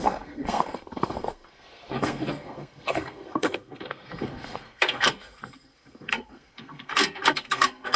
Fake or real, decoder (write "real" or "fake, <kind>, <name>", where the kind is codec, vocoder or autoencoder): fake, codec, SNAC